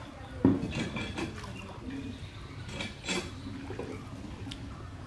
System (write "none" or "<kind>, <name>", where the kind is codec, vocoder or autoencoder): none